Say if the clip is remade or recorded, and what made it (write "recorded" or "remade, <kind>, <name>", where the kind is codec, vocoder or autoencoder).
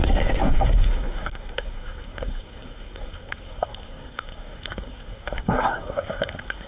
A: remade, codec, SNAC